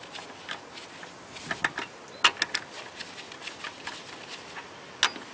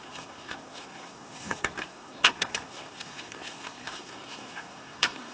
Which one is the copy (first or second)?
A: second